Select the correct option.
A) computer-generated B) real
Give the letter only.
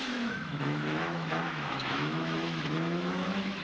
A